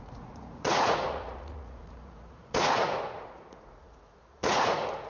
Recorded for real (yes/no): no